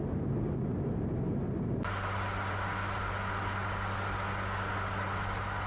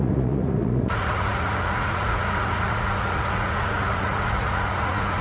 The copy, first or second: second